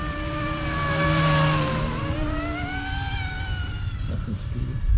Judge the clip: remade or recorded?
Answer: remade